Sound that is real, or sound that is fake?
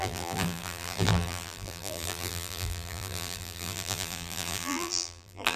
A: fake